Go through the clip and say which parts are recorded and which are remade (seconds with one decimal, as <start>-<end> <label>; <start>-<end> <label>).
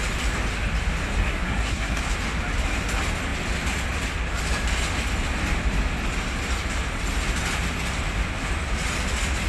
0.0-1.2 recorded; 1.2-2.0 remade; 2.0-9.5 recorded